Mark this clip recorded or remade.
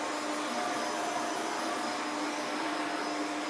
recorded